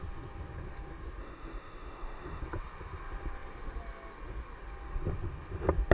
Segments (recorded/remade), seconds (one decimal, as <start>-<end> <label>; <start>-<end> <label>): 0.0-1.2 recorded; 1.2-2.4 remade; 2.4-5.9 recorded